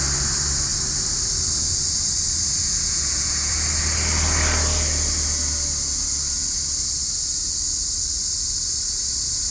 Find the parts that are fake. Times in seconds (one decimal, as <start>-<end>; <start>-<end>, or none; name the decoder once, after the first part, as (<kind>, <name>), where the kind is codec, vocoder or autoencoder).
2.6-3.5 (vocoder, Vocos)